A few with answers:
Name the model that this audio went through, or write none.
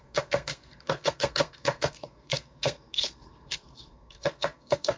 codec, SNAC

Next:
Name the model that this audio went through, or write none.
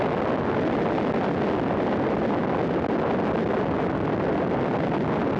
none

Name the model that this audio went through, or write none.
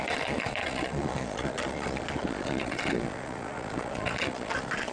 vocoder, Vocos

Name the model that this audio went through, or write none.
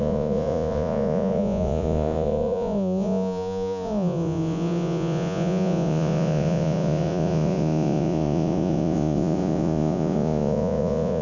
vocoder, Vocos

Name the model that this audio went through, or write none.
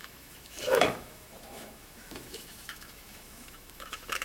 autoencoder, DAC-VAE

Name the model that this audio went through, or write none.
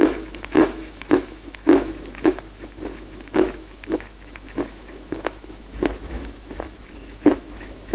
autoencoder, DAC-VAE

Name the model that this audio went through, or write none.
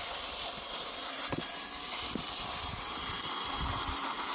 vocoder, BigVGAN v2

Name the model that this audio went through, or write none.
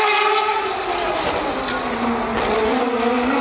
none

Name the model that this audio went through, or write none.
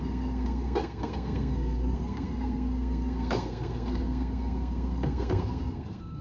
codec, SNAC